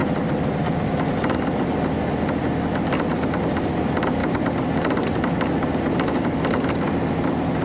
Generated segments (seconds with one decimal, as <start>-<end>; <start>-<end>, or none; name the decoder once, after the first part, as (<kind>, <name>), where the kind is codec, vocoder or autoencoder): none

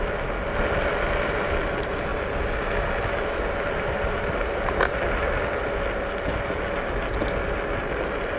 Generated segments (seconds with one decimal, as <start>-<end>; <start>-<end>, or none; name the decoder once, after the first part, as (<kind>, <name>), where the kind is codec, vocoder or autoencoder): none

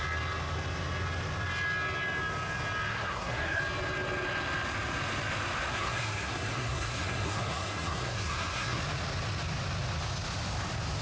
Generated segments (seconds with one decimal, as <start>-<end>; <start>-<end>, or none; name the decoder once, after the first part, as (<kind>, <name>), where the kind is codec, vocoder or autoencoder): 2.9-3.6 (codec, SNAC); 5.7-8.8

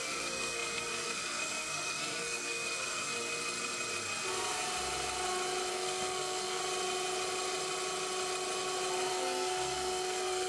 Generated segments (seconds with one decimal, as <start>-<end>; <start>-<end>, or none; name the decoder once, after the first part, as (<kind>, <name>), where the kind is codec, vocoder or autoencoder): 0.0-3.1 (codec, SNAC); 5.7-6.6; 9.1-10.5

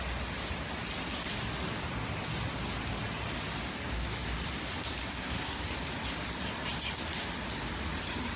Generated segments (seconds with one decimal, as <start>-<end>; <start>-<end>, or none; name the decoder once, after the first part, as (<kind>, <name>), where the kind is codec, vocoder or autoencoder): 5.0-5.6 (codec, SNAC)

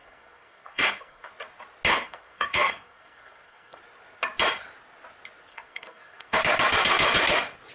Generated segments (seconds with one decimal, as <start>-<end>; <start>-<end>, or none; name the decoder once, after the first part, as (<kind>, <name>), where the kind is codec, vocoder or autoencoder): 0.0-1.3 (codec, SNAC); 1.9-3.8; 5.5-6.4